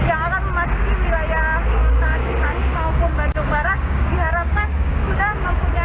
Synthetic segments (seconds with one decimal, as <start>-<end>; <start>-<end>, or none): 1.7-5.2